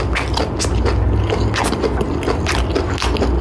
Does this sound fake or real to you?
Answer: real